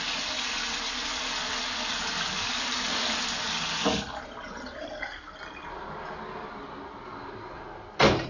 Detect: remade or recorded recorded